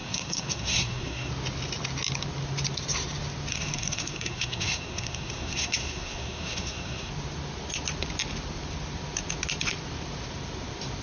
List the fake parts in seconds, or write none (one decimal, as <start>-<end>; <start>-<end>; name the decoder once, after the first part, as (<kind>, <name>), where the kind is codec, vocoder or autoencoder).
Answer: 0.0-1.3 (codec, SNAC); 3.5-7.1